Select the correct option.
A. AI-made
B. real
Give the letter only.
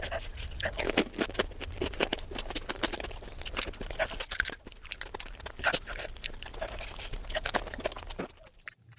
B